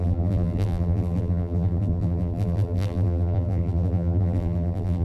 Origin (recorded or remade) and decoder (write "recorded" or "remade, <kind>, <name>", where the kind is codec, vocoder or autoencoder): remade, vocoder, BigVGAN v2